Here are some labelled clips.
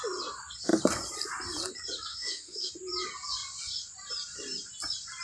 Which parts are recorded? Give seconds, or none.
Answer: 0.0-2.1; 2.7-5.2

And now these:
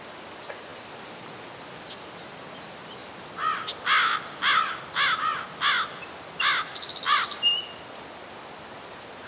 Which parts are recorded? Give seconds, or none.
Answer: 0.0-9.3

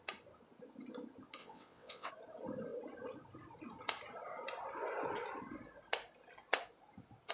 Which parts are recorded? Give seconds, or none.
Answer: 0.0-1.4; 2.1-7.3

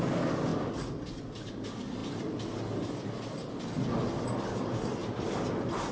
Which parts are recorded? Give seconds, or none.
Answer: 0.0-5.9

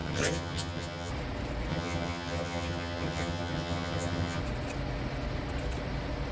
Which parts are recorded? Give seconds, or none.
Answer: 1.1-1.7; 4.4-6.3

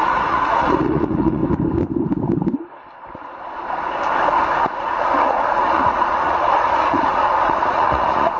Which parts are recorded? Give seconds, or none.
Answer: 1.4-4.6

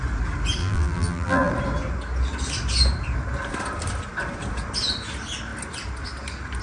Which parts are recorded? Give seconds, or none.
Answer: 0.0-0.6; 1.5-6.6